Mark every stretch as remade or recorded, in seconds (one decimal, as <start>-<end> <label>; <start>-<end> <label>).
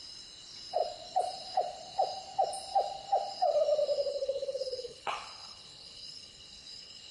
0.0-4.1 recorded; 4.1-7.1 remade